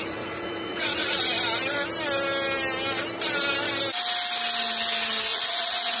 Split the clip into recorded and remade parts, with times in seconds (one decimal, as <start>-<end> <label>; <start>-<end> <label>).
0.0-1.2 remade; 1.2-5.3 recorded; 5.3-6.0 remade

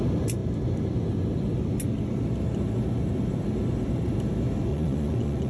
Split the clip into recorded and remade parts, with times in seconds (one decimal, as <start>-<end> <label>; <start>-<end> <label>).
0.0-4.7 recorded; 4.7-5.5 remade

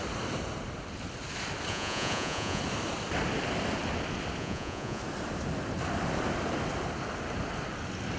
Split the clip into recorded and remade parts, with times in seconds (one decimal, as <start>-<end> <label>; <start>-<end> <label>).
0.0-1.7 recorded; 1.7-2.6 remade; 2.6-4.4 recorded; 4.4-5.0 remade; 5.0-8.2 recorded

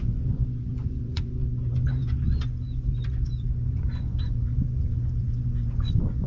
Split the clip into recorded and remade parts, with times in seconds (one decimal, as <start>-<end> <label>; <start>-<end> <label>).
0.0-6.3 remade